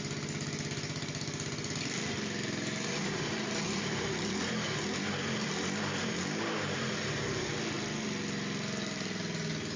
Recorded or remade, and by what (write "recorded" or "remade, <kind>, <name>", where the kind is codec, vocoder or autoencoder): recorded